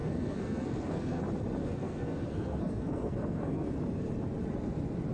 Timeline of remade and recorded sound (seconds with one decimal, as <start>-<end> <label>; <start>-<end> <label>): 0.0-1.2 remade; 1.2-1.6 recorded; 1.6-3.7 remade; 3.7-5.1 recorded